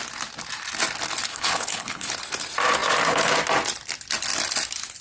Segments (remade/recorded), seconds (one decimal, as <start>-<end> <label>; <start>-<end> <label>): 0.0-1.3 recorded; 1.3-2.1 remade; 2.1-5.0 recorded